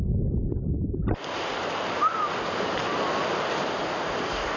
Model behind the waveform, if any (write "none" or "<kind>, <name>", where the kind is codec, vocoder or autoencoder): none